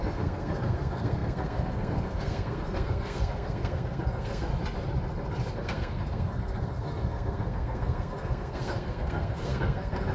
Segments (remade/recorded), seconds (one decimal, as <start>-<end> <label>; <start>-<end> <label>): 0.0-4.5 remade; 4.5-5.5 recorded; 5.5-10.1 remade